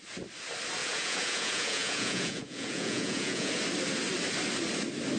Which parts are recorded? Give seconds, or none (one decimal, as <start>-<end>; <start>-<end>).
0.0-0.8; 3.5-5.2

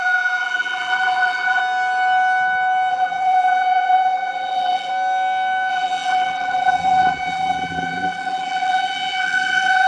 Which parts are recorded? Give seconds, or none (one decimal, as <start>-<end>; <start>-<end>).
1.6-2.9; 4.9-5.7

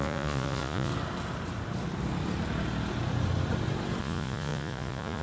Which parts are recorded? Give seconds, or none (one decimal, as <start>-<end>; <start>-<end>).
0.9-4.0

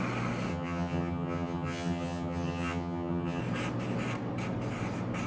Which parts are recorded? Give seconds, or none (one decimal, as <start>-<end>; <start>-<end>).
0.0-0.5; 3.4-5.3

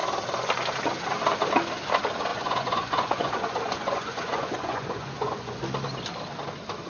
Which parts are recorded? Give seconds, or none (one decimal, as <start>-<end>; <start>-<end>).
0.0-2.3; 5.6-6.9

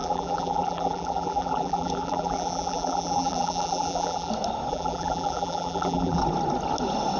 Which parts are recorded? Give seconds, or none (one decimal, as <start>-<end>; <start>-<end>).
4.3-4.7; 6.2-7.2